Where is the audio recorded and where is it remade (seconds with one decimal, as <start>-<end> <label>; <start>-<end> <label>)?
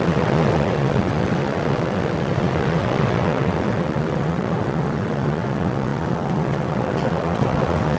0.0-8.0 remade